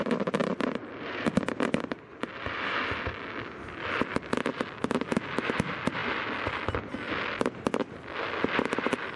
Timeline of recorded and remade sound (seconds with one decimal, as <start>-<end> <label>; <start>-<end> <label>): 0.0-9.2 recorded